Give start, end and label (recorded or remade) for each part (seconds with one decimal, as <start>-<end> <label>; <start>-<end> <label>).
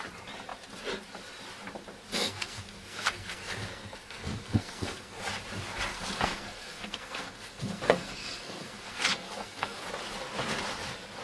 0.0-2.1 recorded; 2.1-5.2 remade; 5.2-5.9 recorded; 5.9-9.8 remade; 9.8-11.2 recorded